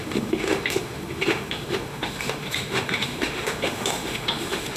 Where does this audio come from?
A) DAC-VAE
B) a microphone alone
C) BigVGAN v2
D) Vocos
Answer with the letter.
A